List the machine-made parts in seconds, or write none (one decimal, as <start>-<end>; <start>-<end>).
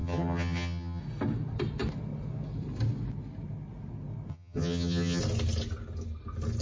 0.0-1.0; 4.3-5.2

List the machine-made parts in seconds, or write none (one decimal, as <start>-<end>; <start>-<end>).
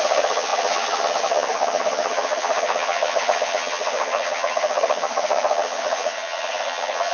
0.0-7.1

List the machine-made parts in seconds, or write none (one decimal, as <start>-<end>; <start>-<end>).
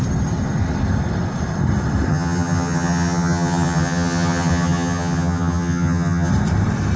2.1-6.3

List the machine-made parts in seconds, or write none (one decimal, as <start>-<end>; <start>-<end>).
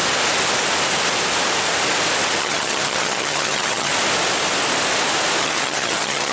2.4-3.9; 5.4-6.3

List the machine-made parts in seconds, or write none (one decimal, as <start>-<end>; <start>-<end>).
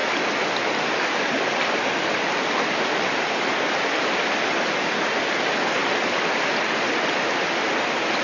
none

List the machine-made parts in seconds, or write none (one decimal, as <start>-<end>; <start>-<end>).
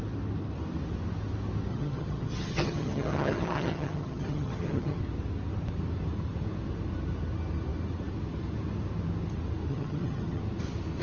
1.7-5.0; 9.7-10.4